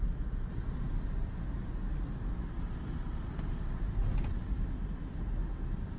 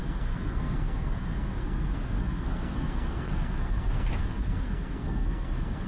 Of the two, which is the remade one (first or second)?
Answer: second